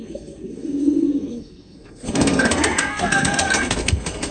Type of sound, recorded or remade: remade